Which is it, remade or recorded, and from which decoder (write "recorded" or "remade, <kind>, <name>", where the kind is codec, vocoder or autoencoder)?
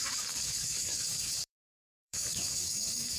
remade, codec, DAC